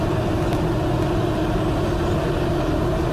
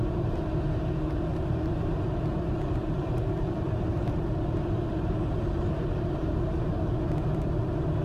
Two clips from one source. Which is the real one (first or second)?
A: first